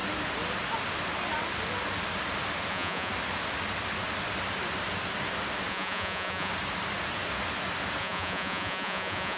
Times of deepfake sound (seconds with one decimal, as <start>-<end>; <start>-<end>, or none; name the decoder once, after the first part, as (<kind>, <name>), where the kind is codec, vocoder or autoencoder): 2.7-3.1 (vocoder, Vocos); 5.7-6.5; 8.0-9.4